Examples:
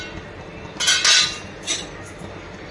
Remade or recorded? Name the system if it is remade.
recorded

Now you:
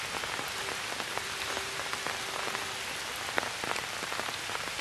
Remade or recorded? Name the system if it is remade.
recorded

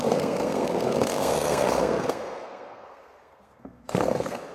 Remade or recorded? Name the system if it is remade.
remade, codec, SNAC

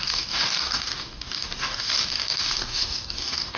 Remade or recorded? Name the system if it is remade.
remade, codec, DAC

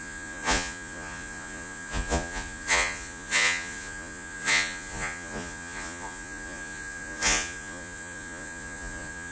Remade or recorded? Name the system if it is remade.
remade, vocoder, Vocos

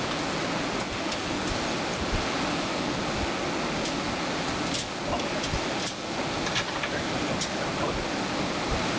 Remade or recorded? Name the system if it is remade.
recorded